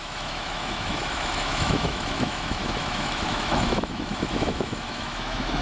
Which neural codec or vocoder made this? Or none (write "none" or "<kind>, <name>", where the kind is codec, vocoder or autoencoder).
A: autoencoder, DAC-VAE